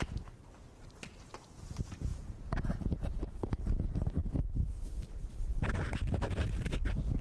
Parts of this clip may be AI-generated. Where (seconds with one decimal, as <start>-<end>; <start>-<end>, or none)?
2.1-3.6